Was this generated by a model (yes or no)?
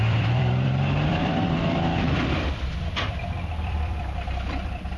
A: yes